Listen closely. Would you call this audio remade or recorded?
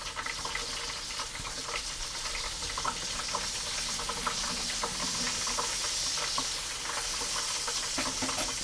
recorded